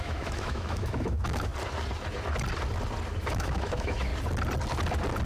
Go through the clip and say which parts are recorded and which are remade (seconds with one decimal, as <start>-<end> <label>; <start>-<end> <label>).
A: 0.0-1.5 remade; 1.5-3.2 recorded; 3.2-4.1 remade; 4.1-5.3 recorded